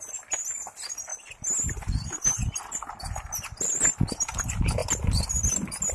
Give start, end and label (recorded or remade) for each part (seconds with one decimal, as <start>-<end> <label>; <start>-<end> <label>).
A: 0.0-5.9 recorded